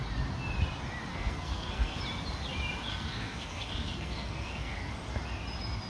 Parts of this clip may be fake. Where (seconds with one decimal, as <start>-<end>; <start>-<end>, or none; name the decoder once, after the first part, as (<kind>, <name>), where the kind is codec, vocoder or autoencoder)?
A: 1.1-2.0 (codec, SNAC); 2.9-4.9